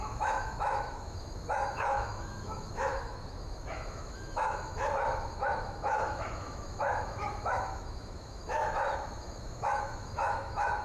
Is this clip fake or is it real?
fake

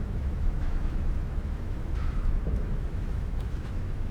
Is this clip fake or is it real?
fake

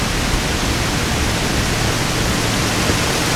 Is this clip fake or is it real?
real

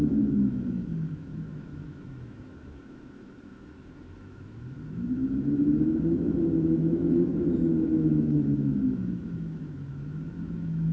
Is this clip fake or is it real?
fake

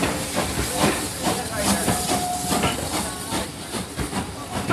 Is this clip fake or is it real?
real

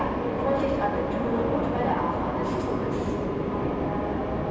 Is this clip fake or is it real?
real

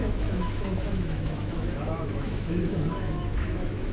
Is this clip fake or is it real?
fake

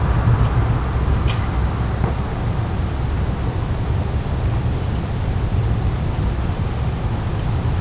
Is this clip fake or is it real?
real